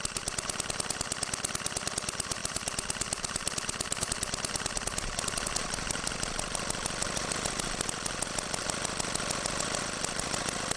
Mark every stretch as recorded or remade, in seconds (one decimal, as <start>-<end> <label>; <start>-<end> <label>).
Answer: 0.0-2.4 recorded; 2.4-4.1 remade; 4.1-7.0 recorded; 7.0-7.8 remade; 7.8-10.8 recorded